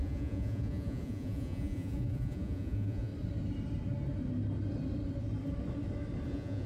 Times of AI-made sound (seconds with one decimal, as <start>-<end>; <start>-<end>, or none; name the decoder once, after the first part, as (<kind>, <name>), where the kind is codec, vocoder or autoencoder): 0.0-3.1 (vocoder, Vocos); 6.3-6.7